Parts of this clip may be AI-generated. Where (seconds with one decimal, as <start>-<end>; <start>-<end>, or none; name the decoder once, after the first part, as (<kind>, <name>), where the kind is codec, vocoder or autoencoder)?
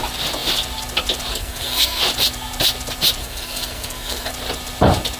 1.3-2.0 (codec, SNAC); 3.2-4.3